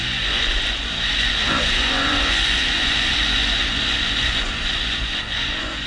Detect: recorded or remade remade